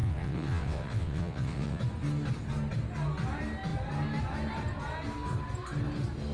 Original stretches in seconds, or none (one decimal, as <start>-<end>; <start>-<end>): 1.8-6.3